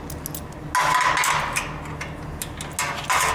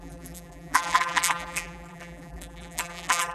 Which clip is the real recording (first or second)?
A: first